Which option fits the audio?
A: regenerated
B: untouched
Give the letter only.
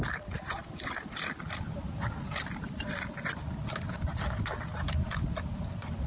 B